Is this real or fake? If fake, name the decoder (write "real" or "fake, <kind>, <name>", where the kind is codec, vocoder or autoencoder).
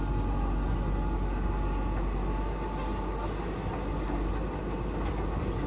real